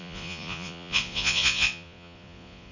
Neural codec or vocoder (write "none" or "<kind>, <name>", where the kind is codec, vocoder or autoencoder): vocoder, Vocos